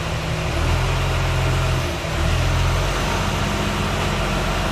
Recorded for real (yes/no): yes